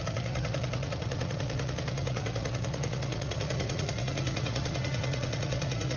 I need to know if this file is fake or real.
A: fake